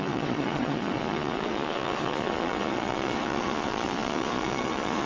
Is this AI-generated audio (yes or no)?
yes